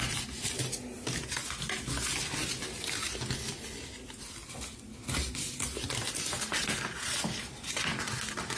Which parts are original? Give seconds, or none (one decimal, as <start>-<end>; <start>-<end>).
0.0-8.6